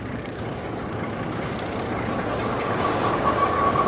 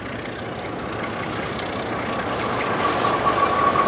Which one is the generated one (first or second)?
first